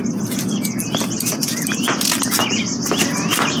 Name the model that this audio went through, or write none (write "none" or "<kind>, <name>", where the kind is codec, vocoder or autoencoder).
none